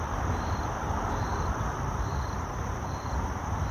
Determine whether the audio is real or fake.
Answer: fake